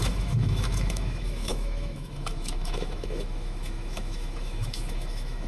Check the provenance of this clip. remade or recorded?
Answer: remade